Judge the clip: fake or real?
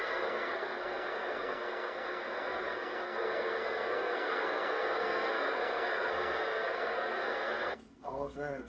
fake